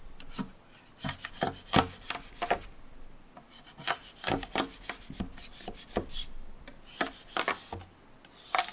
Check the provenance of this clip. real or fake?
real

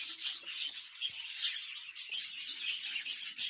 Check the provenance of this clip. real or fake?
real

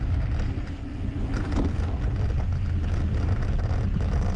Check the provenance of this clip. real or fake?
real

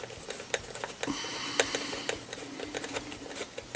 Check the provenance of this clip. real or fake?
real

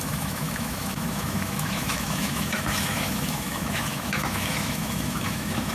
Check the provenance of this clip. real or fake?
fake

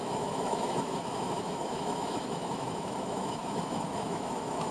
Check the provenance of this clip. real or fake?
fake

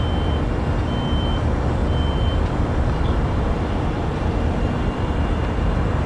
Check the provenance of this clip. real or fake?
real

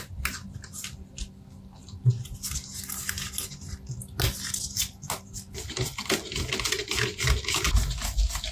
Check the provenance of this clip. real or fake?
real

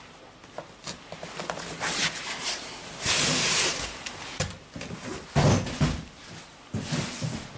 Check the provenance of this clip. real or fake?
real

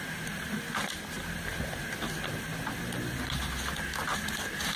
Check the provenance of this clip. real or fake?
real